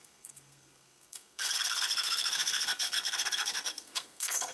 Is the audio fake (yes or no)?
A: yes